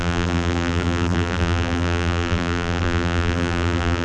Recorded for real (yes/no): no